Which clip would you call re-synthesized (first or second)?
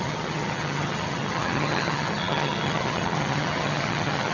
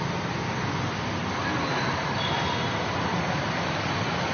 first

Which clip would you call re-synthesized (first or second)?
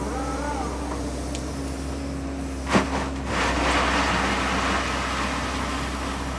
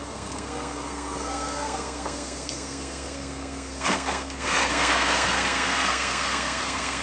second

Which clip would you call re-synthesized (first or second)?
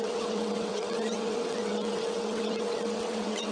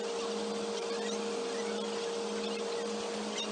first